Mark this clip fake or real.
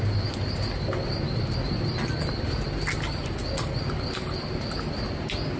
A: real